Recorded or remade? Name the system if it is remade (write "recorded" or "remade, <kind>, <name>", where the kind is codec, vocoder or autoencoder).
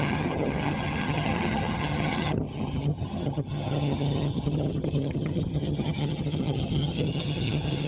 remade, vocoder, HiFi-GAN